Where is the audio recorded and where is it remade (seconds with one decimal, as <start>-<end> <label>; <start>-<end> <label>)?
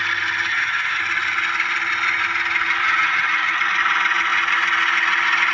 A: 0.0-0.5 recorded; 0.5-1.0 remade; 1.0-2.8 recorded; 2.8-3.6 remade; 3.6-5.5 recorded